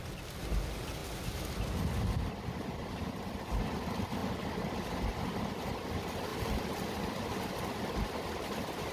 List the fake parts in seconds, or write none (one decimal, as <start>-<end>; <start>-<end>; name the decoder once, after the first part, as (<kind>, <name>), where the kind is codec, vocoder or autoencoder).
6.3-8.3 (vocoder, BigVGAN v2)